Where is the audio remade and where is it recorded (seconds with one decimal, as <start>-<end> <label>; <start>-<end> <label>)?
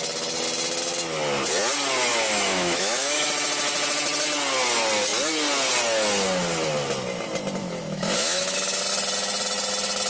0.0-2.1 recorded; 2.1-3.3 remade; 3.3-7.6 recorded; 7.6-8.8 remade; 8.8-10.1 recorded